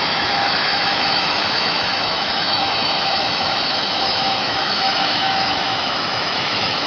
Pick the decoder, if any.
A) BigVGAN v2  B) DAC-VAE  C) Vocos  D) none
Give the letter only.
B